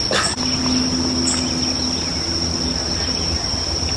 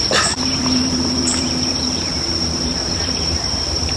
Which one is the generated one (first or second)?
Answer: second